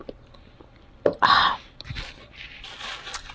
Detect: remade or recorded recorded